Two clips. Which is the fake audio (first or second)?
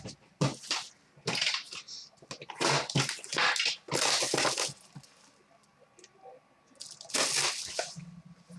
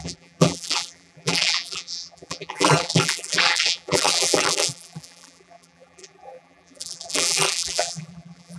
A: second